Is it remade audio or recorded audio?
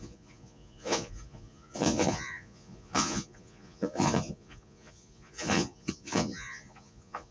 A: remade